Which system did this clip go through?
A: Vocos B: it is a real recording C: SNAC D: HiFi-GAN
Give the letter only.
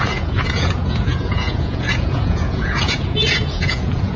A